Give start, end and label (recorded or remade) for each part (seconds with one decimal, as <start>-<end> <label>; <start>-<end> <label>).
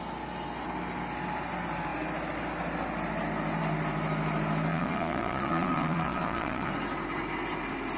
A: 0.0-4.7 recorded; 4.7-6.7 remade; 6.7-8.0 recorded